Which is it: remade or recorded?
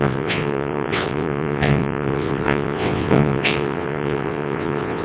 remade